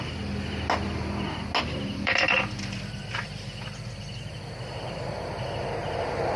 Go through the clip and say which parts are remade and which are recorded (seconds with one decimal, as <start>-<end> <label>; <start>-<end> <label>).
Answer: 0.0-1.9 recorded; 1.9-5.7 remade; 5.7-6.4 recorded